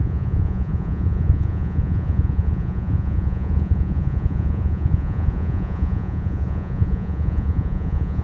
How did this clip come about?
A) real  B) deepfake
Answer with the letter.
B